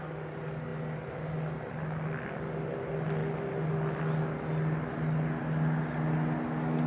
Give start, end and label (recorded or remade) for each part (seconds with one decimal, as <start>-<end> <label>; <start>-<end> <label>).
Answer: 0.0-6.9 recorded